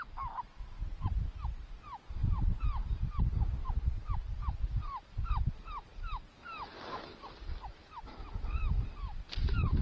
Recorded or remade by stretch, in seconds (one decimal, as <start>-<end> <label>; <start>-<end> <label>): 0.0-4.0 recorded; 4.0-8.1 remade; 8.1-9.8 recorded